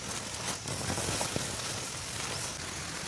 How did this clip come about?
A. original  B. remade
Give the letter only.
A